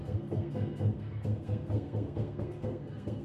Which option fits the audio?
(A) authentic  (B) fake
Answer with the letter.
B